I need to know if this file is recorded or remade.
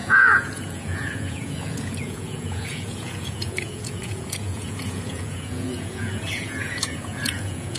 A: remade